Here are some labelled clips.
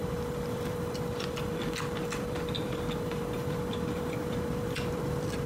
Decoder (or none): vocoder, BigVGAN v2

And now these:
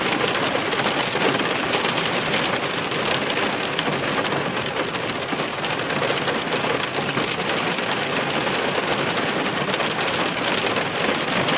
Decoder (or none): none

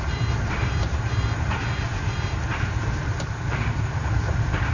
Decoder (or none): vocoder, BigVGAN v2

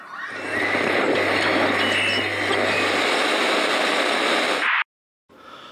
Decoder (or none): none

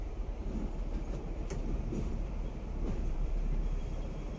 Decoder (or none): vocoder, BigVGAN v2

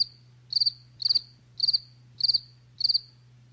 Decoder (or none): none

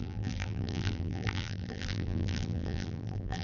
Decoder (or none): vocoder, BigVGAN v2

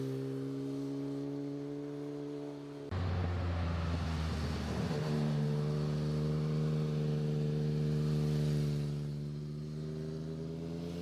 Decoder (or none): none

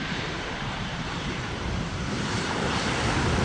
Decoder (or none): vocoder, BigVGAN v2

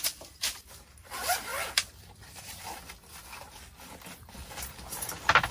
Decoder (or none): vocoder, BigVGAN v2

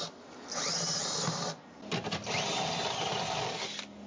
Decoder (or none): none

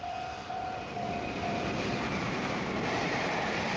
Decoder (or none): vocoder, BigVGAN v2